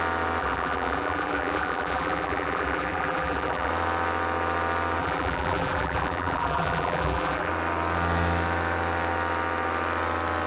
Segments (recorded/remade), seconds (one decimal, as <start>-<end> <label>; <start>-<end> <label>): 0.0-0.4 recorded; 0.4-3.7 remade; 3.7-5.0 recorded; 5.0-7.5 remade; 7.5-10.5 recorded